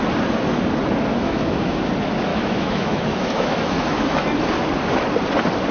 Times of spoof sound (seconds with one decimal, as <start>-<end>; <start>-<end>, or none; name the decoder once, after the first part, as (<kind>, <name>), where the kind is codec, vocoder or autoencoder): 1.1-1.8 (autoencoder, DAC-VAE); 2.3-4.2